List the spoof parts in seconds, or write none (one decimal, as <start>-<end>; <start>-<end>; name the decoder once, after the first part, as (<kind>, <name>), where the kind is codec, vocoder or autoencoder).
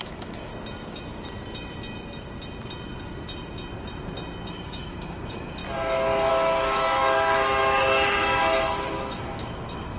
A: 0.0-0.5 (autoencoder, DAC-VAE); 4.5-5.6; 6.3-10.0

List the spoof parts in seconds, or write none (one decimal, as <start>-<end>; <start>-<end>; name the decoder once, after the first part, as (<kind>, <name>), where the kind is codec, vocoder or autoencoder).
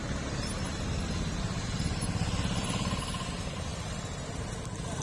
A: 3.7-4.4 (vocoder, BigVGAN v2)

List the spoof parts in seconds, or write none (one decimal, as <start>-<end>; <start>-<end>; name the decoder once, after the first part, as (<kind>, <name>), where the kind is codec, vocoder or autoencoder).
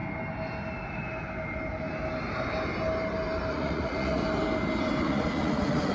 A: 3.5-4.2 (vocoder, Vocos); 5.0-5.9